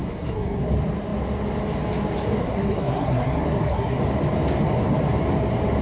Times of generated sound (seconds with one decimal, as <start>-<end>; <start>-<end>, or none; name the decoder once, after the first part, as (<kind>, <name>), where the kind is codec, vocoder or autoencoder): 0.0-0.6 (codec, SNAC); 2.4-4.0